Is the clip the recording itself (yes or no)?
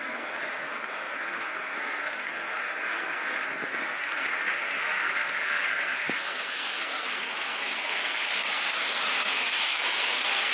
no